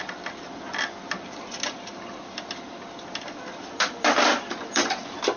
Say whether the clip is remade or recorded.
remade